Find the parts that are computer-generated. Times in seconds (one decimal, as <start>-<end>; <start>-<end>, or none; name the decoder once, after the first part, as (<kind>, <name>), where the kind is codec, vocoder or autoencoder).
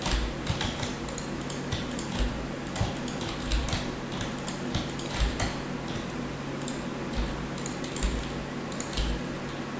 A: none